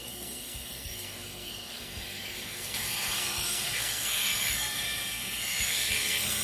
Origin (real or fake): fake